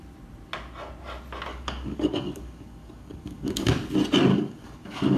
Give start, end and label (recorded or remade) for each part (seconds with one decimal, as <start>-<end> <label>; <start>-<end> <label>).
0.0-1.5 recorded; 1.5-3.7 remade; 3.7-4.3 recorded; 4.3-5.2 remade